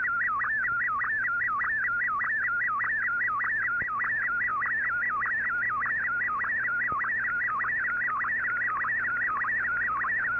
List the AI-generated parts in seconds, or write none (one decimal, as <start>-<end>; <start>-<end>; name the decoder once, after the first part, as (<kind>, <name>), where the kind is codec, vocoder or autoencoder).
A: none